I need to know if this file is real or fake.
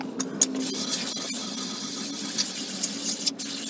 real